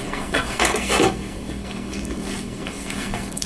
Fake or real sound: fake